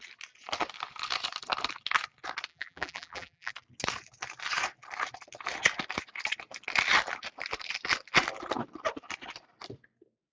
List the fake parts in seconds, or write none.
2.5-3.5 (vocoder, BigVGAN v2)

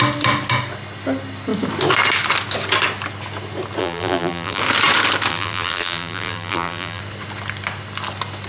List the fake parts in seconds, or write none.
3.8-4.6 (vocoder, BigVGAN v2); 5.3-7.0

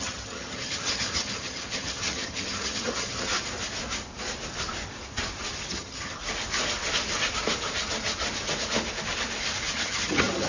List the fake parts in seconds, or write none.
0.0-3.3 (vocoder, HiFi-GAN); 5.7-6.2; 9.7-10.5

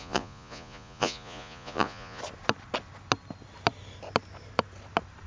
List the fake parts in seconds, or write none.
0.0-2.2 (vocoder, Vocos)

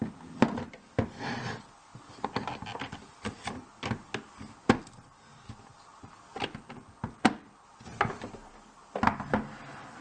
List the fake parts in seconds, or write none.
none

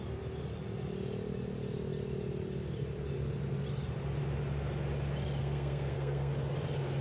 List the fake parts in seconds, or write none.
5.4-6.3 (codec, SNAC)

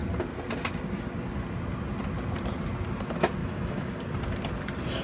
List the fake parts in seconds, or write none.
3.4-3.9 (autoencoder, DAC-VAE)

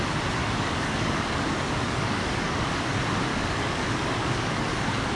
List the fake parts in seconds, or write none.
0.4-2.7 (codec, DAC); 3.3-5.2